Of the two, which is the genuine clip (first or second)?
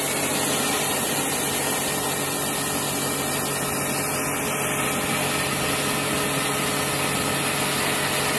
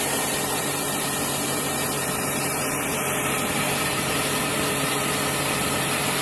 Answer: first